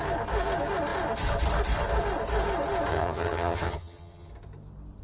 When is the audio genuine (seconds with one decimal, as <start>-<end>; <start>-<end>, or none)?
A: 0.0-2.9; 4.3-5.0